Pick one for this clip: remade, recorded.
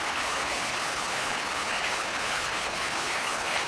remade